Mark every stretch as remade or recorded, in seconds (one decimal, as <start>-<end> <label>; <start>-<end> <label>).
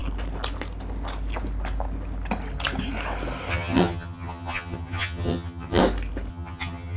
0.0-3.5 recorded; 3.5-5.8 remade; 5.8-6.3 recorded; 6.3-7.0 remade